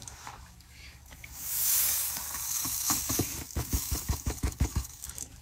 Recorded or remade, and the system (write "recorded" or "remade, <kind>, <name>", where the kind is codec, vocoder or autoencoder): remade, codec, DAC